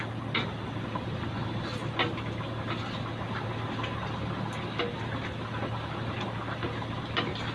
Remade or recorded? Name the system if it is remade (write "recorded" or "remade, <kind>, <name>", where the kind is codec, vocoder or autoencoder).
recorded